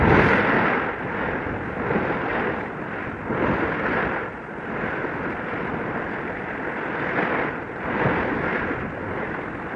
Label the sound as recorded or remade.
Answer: recorded